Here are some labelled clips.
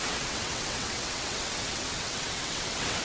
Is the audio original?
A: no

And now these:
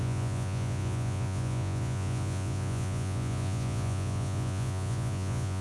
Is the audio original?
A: no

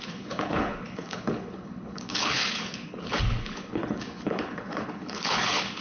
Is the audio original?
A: no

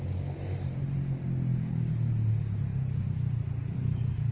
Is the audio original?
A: yes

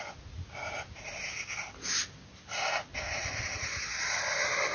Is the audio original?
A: yes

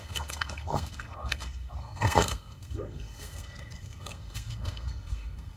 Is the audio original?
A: no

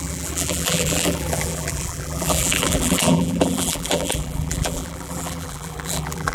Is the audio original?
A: no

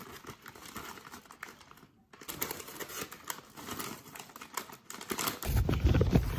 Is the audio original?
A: yes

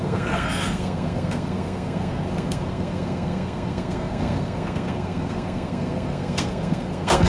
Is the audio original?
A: no